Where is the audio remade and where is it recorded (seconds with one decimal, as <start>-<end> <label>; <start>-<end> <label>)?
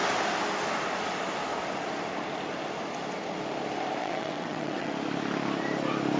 0.0-4.0 recorded; 4.0-4.9 remade; 4.9-6.2 recorded